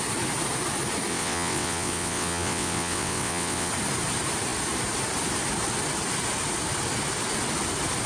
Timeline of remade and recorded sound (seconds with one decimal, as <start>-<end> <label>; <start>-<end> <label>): 0.0-1.1 recorded; 1.1-3.7 remade; 3.7-8.1 recorded